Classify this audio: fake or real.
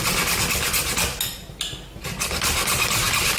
real